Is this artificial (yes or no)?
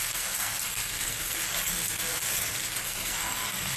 yes